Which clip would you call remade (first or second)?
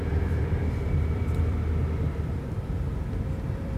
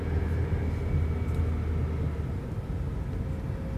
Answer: first